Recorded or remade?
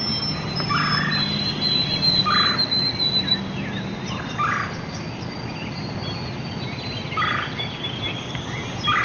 recorded